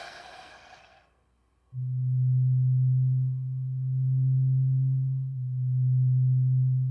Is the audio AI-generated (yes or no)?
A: yes